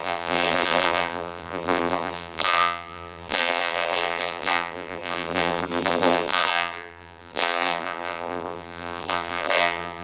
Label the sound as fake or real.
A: fake